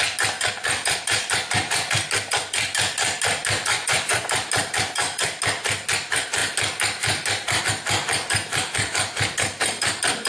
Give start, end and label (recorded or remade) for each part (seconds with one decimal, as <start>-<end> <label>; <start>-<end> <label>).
0.0-3.7 recorded; 3.7-4.3 remade; 4.3-10.3 recorded